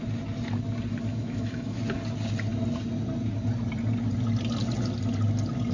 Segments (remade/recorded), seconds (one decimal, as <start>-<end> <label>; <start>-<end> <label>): 0.0-1.1 recorded; 1.1-1.8 remade; 1.8-5.7 recorded